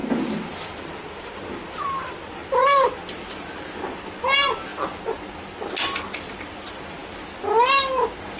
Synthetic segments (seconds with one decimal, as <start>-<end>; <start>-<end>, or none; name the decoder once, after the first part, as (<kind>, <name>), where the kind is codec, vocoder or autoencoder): 1.3-4.7 (vocoder, BigVGAN v2); 6.2-7.0; 7.7-8.4